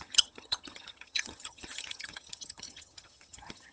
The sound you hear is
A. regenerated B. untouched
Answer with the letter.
A